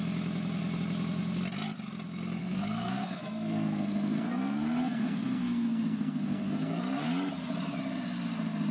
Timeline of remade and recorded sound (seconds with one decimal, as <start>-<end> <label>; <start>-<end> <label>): 0.0-2.4 recorded; 2.4-7.1 remade; 7.1-8.7 recorded